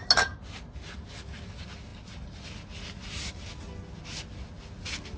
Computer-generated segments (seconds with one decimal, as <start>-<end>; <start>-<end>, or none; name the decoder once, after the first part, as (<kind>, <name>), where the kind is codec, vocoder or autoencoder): none